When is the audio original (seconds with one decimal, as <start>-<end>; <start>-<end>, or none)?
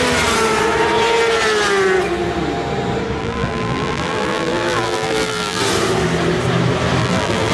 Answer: 0.0-3.2; 5.6-7.0